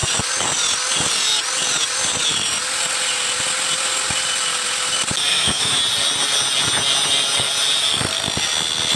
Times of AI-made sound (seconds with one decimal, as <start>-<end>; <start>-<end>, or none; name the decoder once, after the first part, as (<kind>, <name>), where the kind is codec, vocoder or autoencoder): 5.3-5.8 (autoencoder, DAC-VAE)